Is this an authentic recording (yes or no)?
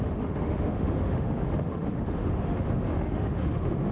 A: no